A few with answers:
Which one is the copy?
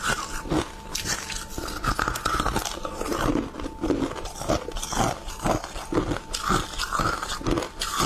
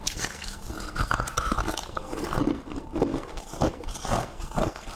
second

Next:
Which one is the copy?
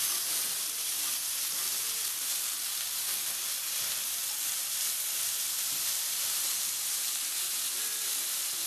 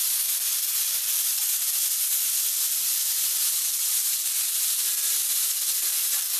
first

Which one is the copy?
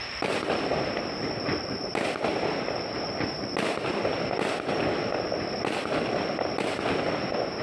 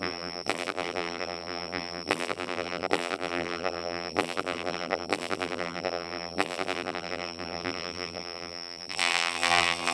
second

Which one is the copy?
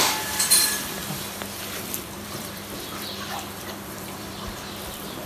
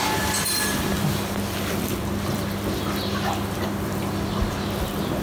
first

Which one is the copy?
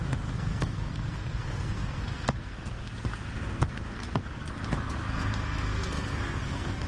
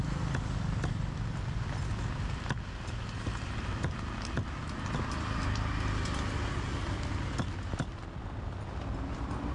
first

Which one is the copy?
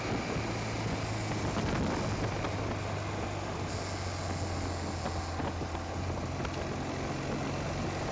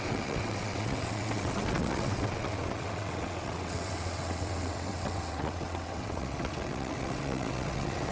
second